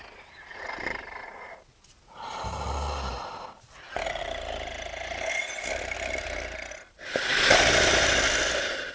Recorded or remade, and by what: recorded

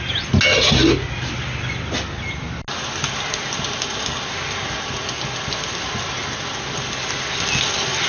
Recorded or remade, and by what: recorded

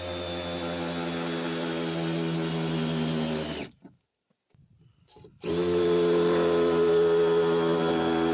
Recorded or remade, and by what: recorded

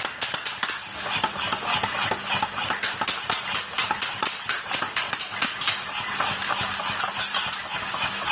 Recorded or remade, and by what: recorded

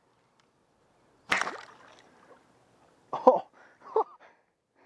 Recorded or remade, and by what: recorded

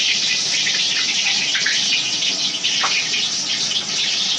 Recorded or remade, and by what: remade, vocoder, WaveNeXt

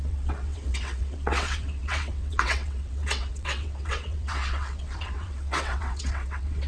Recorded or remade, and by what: remade, vocoder, WaveNeXt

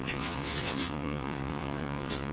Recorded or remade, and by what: remade, vocoder, WaveNeXt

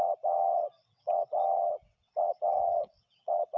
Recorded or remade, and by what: remade, vocoder, WaveNeXt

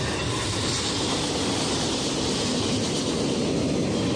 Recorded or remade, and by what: recorded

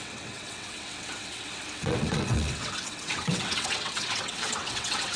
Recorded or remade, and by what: remade, vocoder, WaveNeXt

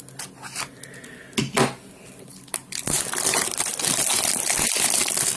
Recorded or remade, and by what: recorded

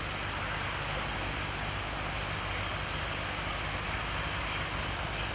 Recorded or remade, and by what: recorded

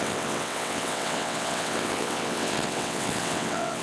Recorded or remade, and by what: remade, vocoder, WaveNeXt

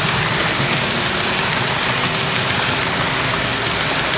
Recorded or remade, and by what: recorded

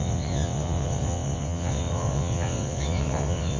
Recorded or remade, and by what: remade, vocoder, WaveNeXt